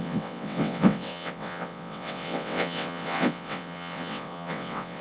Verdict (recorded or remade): remade